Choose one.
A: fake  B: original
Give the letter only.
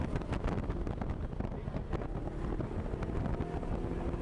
B